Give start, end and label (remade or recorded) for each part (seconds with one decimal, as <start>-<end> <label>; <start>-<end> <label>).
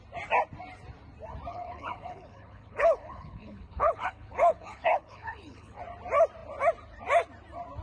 0.0-1.5 recorded; 1.5-5.8 remade; 5.8-7.8 recorded